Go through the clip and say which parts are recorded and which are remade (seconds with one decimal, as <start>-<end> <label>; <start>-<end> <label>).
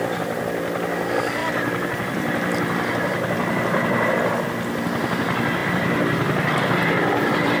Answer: 0.0-1.4 recorded; 1.4-4.3 remade; 4.3-5.6 recorded; 5.6-7.6 remade